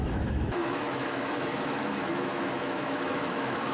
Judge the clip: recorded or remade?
remade